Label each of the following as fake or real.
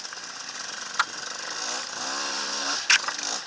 real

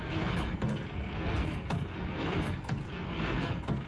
fake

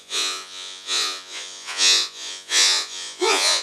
fake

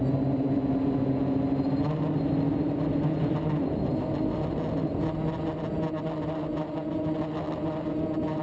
real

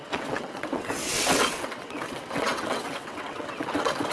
fake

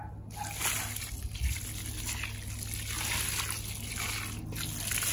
real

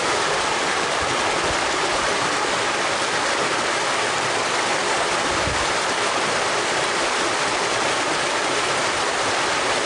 real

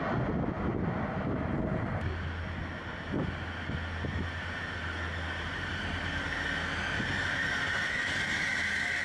real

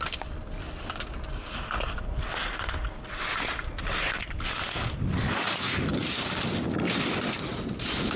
real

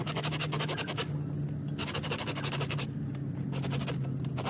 real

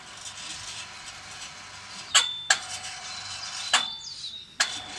real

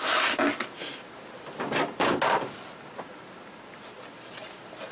real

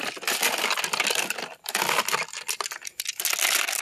real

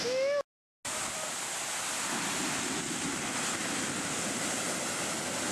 real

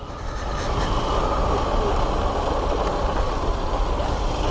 real